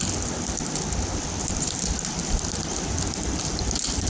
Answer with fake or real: real